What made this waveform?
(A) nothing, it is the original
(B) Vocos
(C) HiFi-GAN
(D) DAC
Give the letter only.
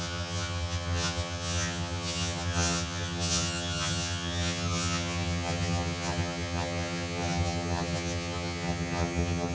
C